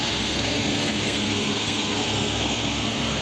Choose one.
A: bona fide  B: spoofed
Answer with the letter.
B